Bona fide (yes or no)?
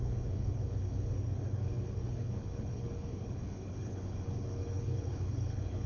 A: no